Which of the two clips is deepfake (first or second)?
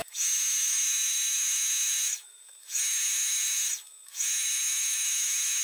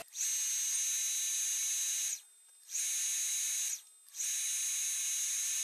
first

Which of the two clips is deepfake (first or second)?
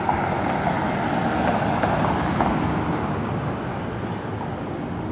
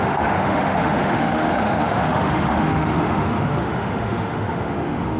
second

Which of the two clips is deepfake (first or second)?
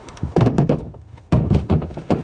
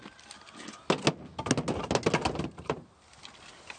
first